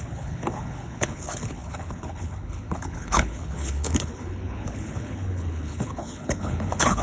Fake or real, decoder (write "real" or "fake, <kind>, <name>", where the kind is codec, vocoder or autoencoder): fake, codec, HILCodec